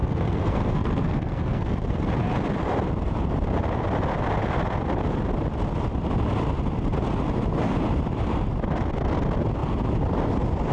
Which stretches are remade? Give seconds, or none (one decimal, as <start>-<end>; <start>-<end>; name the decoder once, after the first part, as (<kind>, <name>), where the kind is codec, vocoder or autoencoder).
0.0-2.1 (codec, SNAC)